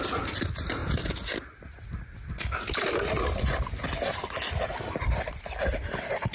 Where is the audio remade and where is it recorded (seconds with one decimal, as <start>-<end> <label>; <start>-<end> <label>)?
0.0-6.3 recorded